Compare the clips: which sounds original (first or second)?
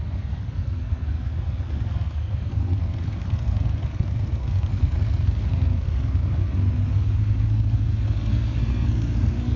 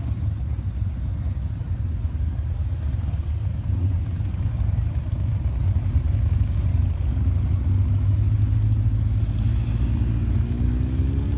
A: second